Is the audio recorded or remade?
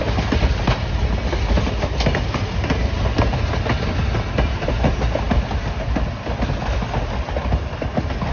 recorded